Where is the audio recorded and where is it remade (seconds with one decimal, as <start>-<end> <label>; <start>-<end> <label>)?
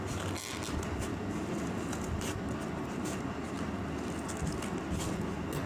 0.0-5.7 recorded